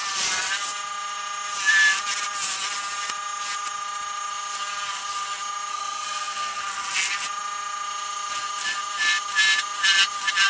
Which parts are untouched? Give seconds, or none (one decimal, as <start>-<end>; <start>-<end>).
0.0-5.7; 6.6-10.5

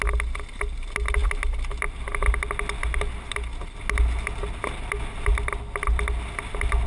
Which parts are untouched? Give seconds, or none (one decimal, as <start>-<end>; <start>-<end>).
0.0-6.9

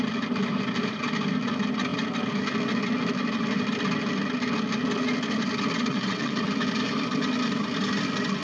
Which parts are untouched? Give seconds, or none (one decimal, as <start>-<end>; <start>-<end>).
0.0-5.9; 6.4-8.4

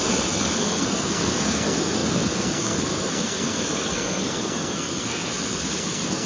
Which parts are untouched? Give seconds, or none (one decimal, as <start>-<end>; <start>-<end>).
none

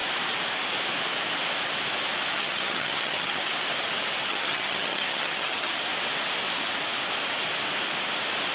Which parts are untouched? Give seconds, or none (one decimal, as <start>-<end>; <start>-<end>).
0.0-2.3; 3.5-4.3; 5.7-8.5

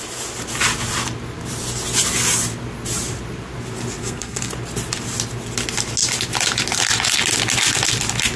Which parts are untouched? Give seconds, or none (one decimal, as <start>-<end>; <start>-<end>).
0.0-4.0; 4.5-8.4